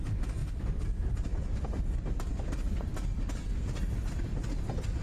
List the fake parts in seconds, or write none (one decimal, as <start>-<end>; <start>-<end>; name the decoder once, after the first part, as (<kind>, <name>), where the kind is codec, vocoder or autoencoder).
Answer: 0.4-1.6 (vocoder, BigVGAN v2)